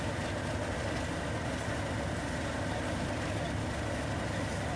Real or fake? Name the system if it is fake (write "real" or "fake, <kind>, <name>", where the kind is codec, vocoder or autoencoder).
real